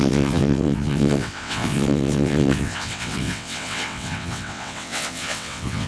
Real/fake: fake